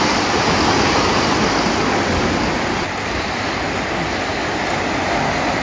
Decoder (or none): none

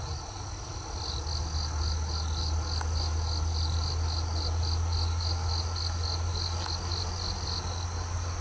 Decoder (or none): none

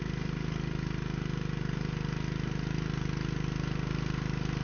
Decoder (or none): none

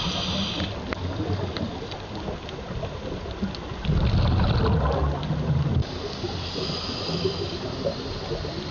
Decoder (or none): none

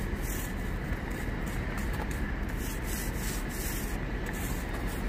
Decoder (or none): none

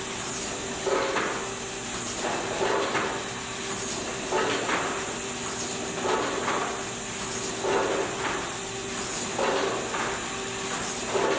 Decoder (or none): none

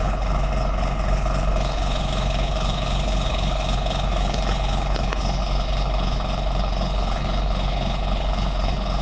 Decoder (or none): codec, HILCodec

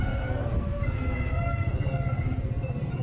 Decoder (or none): codec, SNAC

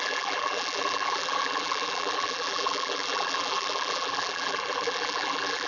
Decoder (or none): vocoder, BigVGAN v2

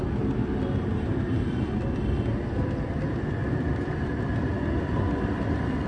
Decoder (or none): vocoder, BigVGAN v2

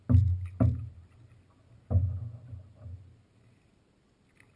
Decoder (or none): none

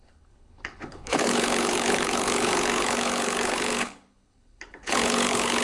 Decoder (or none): codec, HILCodec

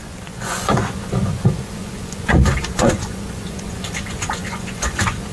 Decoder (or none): vocoder, Vocos